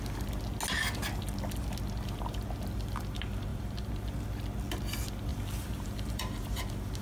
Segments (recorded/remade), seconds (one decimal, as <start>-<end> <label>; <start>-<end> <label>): 0.0-3.5 recorded; 3.5-4.1 remade; 4.1-5.3 recorded; 5.3-6.6 remade; 6.6-7.0 recorded